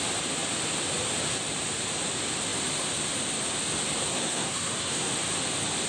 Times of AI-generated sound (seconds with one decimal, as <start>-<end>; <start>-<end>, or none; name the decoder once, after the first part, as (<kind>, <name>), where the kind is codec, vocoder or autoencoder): 4.1-5.1 (codec, SNAC)